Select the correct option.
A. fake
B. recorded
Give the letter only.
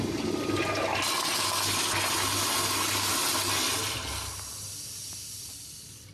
B